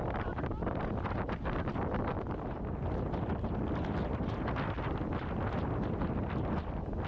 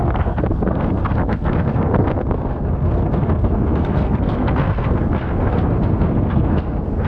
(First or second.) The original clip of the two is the first